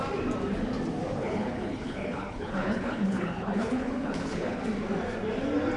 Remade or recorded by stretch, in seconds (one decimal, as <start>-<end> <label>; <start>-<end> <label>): 0.0-1.1 recorded; 1.1-4.6 remade; 4.6-5.8 recorded